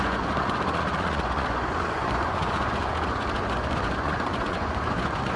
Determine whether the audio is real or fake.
fake